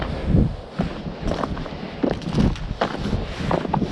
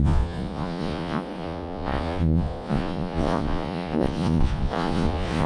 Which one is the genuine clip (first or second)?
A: first